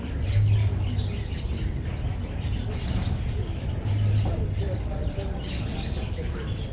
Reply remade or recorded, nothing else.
recorded